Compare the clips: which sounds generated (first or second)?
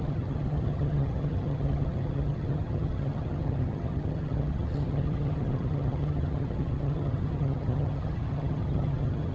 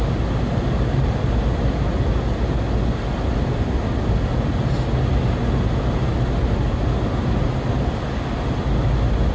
first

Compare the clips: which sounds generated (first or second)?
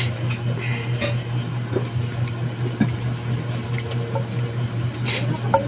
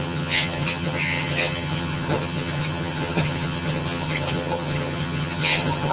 second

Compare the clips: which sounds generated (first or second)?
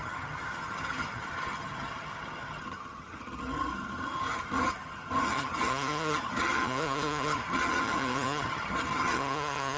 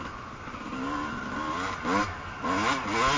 first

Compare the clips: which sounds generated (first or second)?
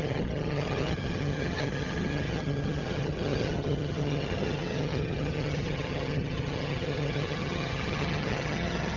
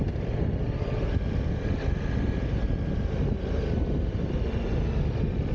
first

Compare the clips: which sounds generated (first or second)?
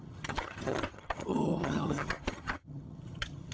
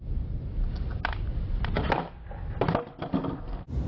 first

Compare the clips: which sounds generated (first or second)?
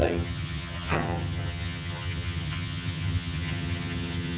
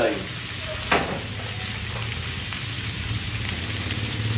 first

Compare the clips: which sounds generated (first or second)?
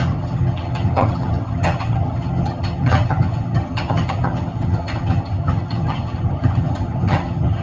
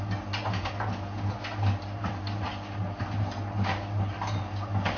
first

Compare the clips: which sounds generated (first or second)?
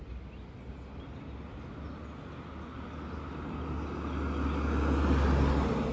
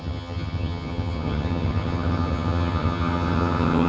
second